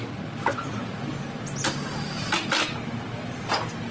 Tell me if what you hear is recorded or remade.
recorded